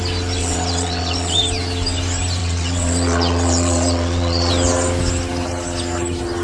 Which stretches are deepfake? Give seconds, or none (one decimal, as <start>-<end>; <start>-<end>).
0.4-1.4; 2.4-4.5